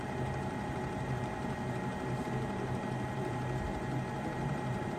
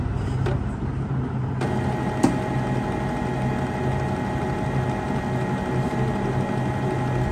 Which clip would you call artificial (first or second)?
first